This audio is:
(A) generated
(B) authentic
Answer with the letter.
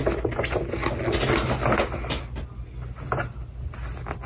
B